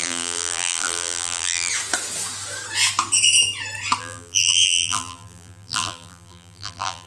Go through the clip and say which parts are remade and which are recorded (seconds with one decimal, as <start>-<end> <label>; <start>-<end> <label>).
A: 0.0-1.7 remade; 1.7-4.0 recorded; 4.0-7.1 remade